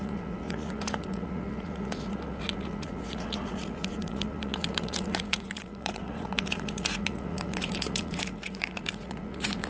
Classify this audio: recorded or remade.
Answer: remade